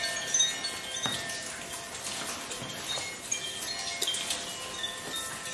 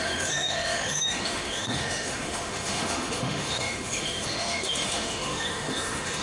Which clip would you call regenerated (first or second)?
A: second